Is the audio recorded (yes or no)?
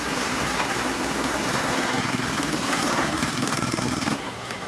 no